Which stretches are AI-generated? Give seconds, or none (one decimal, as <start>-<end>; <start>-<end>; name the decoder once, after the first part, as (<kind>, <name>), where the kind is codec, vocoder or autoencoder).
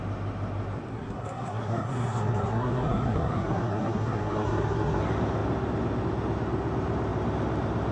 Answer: 0.9-5.0 (codec, SNAC)